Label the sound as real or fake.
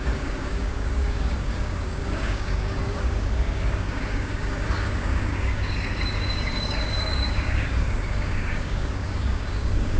fake